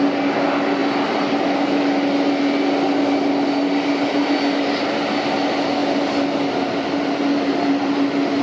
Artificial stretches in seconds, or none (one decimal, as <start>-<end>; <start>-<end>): none